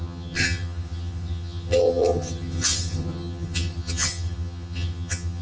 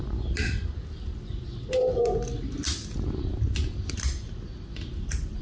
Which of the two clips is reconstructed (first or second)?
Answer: first